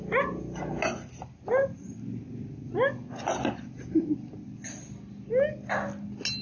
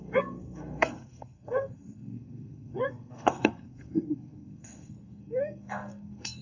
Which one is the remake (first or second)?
second